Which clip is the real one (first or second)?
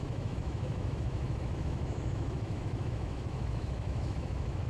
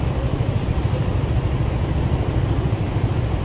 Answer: second